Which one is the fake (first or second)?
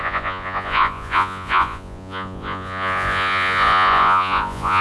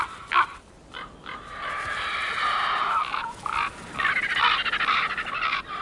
first